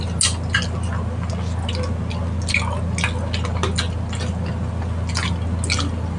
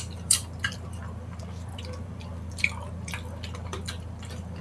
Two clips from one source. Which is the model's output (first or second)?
second